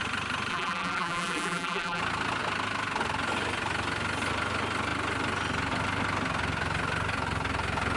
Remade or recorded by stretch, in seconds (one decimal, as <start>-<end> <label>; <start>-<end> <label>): 0.0-0.5 recorded; 0.5-2.0 remade; 2.0-8.0 recorded